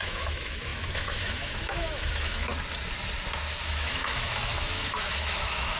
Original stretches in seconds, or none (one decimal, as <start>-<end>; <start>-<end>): 2.5-3.6